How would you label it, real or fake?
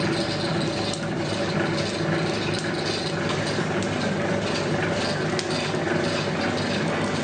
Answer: real